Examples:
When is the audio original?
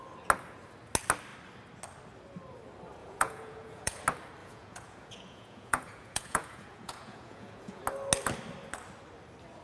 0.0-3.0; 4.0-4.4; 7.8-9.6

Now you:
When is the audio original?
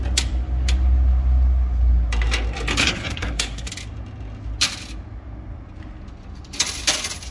0.0-2.8; 3.7-7.3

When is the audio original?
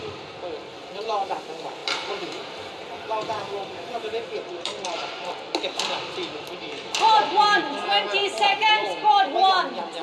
0.0-0.7; 1.3-1.8; 5.3-8.2; 8.7-10.0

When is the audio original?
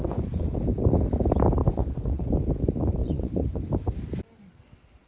0.5-1.6; 2.3-3.0; 3.7-5.1